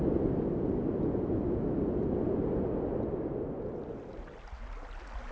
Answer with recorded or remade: recorded